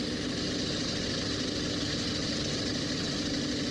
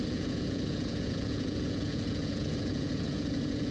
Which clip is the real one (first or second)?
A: first